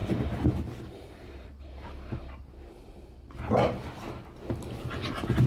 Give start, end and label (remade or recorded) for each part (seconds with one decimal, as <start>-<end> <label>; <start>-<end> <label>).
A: 0.0-3.3 remade; 3.3-5.5 recorded